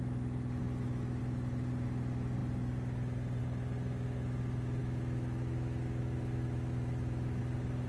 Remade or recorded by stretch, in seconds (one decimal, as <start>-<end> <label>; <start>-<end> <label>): 0.0-0.6 recorded; 0.6-1.2 remade; 1.2-4.8 recorded; 4.8-7.4 remade; 7.4-7.9 recorded

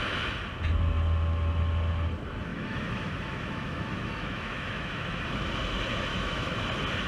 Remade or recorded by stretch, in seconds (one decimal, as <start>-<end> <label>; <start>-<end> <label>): 0.0-2.5 recorded; 2.5-5.2 remade; 5.2-6.1 recorded; 6.1-6.6 remade; 6.6-7.1 recorded

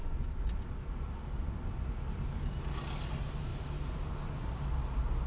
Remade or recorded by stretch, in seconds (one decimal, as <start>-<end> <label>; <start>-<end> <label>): 0.0-5.3 recorded